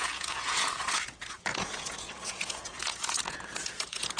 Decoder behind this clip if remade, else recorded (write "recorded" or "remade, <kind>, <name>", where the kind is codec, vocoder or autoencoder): remade, vocoder, Vocos